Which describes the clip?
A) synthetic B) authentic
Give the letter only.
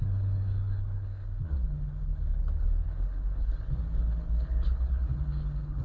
A